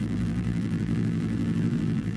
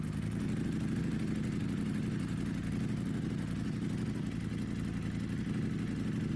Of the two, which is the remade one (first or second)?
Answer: first